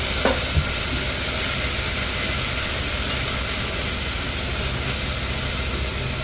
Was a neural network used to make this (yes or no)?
no